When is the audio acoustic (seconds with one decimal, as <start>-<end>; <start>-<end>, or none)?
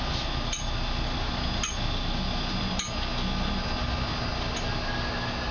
0.0-5.5